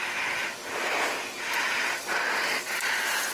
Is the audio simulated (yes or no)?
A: no